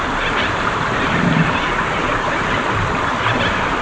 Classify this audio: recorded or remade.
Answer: recorded